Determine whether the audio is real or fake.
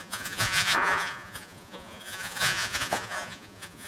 fake